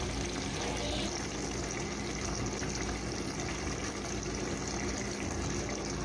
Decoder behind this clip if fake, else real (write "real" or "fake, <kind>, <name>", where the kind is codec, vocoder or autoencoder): real